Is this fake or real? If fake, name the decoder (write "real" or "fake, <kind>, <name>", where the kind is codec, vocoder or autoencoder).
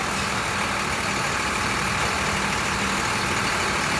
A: real